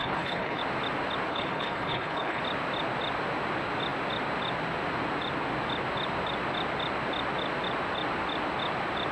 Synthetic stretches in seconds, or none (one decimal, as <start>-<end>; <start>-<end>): 0.0-0.6; 1.3-2.4